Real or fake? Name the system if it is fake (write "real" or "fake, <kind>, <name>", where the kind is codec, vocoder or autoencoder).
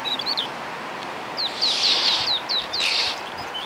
fake, vocoder, BigVGAN v2